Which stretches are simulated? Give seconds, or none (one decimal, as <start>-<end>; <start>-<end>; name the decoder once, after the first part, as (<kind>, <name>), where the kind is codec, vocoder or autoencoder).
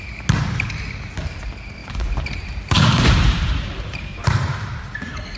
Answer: 1.8-5.0 (vocoder, BigVGAN v2)